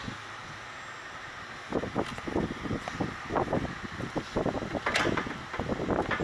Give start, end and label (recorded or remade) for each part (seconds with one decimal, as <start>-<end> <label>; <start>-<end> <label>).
0.0-6.2 recorded